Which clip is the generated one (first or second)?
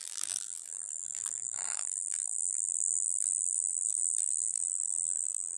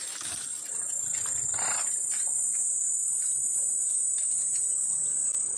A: first